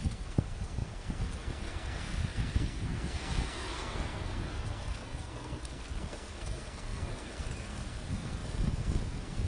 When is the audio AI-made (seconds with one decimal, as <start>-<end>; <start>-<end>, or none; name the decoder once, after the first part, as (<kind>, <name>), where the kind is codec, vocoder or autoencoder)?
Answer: 0.0-9.5 (codec, SNAC)